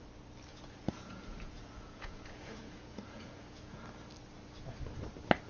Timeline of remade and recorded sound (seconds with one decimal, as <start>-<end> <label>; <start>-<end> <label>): 0.0-0.5 recorded; 0.5-3.8 remade; 3.8-5.5 recorded